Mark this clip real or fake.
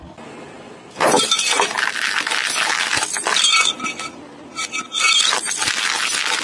real